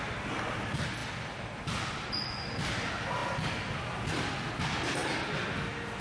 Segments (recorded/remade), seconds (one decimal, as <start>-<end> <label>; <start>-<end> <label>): 0.0-1.0 recorded; 1.0-1.7 remade; 1.7-3.2 recorded; 3.2-4.5 remade; 4.5-6.0 recorded